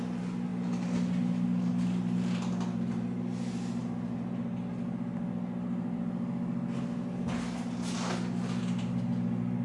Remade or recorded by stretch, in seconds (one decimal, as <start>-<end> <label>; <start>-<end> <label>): 0.0-9.6 recorded